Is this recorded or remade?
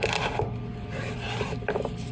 recorded